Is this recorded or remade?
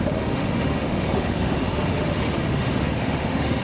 remade